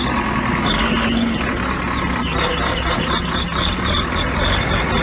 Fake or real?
real